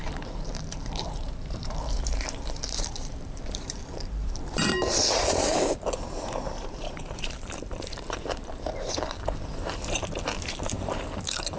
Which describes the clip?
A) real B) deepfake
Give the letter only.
B